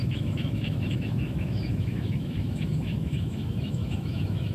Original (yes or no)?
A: no